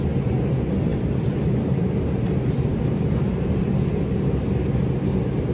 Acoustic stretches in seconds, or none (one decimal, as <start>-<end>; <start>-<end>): 0.0-0.9; 1.9-2.7; 3.5-5.5